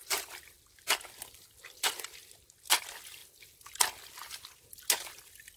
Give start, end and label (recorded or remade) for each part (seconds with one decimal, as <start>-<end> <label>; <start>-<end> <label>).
0.0-1.4 remade; 1.4-5.6 recorded